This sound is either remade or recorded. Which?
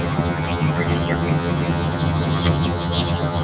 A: remade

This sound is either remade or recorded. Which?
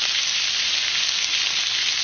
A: recorded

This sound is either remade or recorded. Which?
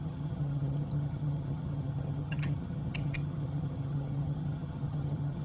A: remade